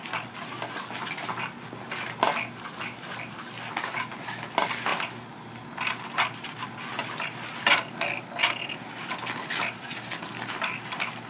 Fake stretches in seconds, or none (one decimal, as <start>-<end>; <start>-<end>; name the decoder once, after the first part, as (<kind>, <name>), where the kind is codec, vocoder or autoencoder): none